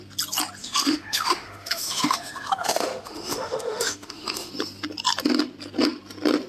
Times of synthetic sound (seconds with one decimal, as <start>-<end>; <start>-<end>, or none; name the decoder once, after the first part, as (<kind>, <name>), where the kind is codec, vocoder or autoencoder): 0.6-4.5 (autoencoder, DAC-VAE)